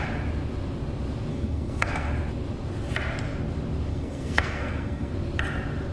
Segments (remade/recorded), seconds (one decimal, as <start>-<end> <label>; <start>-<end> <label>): 0.0-1.3 recorded; 1.3-2.1 remade; 2.1-3.9 recorded; 3.9-5.1 remade; 5.1-5.9 recorded